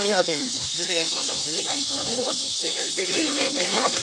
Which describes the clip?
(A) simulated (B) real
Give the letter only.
A